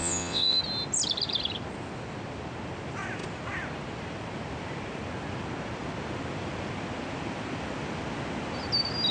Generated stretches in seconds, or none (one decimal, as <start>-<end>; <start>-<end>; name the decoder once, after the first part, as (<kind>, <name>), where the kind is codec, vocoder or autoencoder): 0.0-0.6 (vocoder, WaveNeXt)